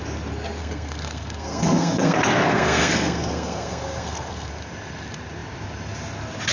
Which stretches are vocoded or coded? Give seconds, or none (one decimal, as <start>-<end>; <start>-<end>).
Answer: 0.6-4.5